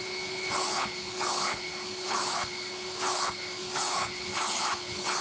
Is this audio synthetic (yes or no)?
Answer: yes